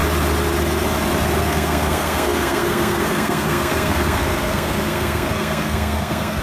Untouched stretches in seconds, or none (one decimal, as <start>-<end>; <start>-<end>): 0.0-1.4